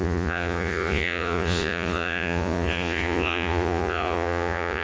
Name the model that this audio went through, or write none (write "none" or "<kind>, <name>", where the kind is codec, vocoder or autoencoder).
vocoder, Vocos